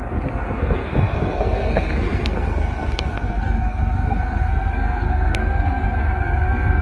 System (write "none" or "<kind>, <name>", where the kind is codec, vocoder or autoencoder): codec, SNAC